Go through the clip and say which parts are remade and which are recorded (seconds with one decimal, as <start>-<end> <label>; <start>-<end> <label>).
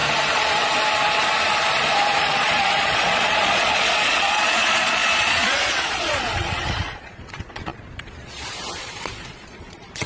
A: 0.0-2.2 recorded; 2.2-10.1 remade